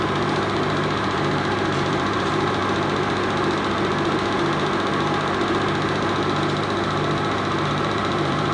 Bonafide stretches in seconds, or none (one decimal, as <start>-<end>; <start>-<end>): 2.6-7.7